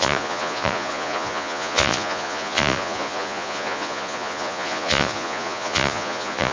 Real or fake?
fake